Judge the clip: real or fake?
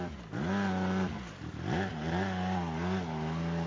real